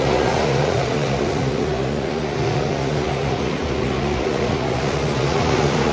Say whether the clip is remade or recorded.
remade